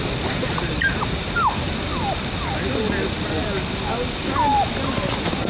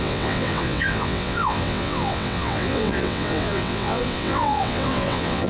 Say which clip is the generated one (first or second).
second